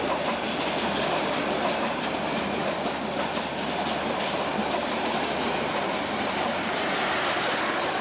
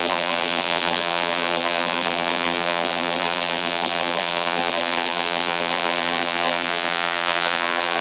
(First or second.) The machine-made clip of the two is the second